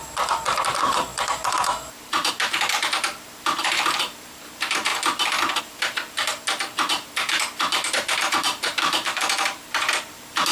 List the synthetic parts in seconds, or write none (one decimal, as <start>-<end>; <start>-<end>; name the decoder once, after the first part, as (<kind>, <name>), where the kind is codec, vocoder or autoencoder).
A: 0.0-4.9 (vocoder, BigVGAN v2); 5.6-6.3; 6.9-10.5